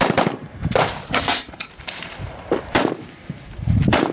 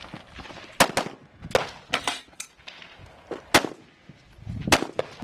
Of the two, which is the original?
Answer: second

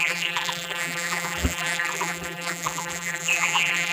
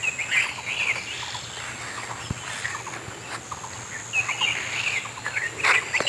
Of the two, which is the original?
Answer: second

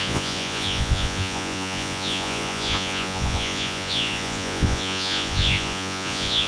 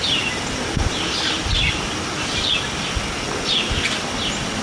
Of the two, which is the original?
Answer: second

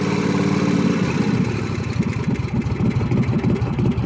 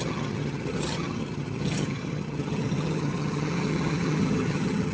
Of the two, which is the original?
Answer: first